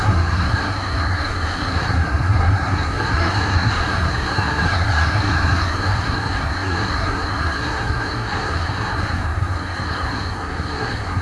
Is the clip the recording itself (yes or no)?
no